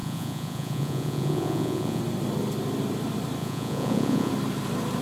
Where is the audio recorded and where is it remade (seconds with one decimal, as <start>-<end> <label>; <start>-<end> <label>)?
0.0-2.0 remade; 2.0-3.4 recorded; 3.4-4.3 remade; 4.3-5.0 recorded